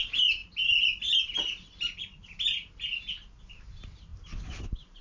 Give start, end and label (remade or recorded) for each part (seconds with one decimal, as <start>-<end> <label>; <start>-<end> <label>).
0.0-5.0 recorded